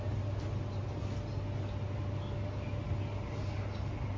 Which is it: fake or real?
real